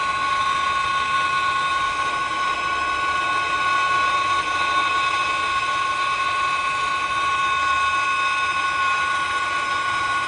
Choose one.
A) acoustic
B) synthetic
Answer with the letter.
A